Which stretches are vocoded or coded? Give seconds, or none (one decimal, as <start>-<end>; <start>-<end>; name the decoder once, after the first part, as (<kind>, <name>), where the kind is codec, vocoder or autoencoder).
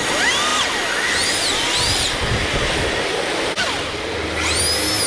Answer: none